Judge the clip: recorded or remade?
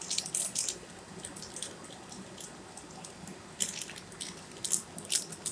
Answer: recorded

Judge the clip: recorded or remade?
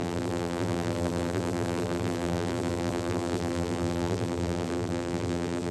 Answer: remade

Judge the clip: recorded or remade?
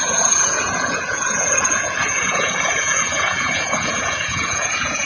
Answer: remade